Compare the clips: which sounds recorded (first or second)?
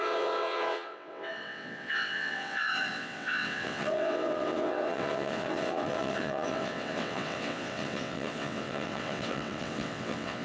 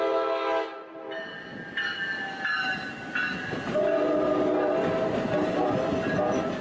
second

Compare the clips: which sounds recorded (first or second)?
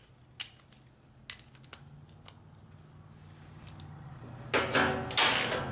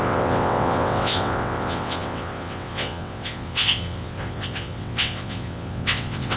first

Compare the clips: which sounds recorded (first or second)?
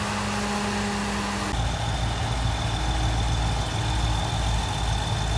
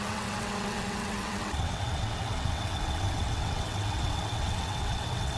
first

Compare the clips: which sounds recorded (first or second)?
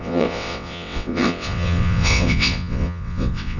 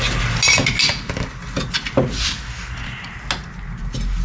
second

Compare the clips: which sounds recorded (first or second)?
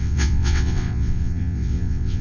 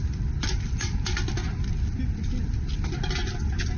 second